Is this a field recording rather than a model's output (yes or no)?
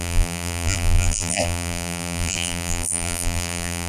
no